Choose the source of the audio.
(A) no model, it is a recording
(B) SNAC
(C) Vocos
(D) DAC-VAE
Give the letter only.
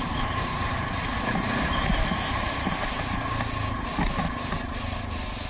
A